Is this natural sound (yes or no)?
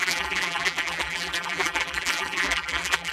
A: no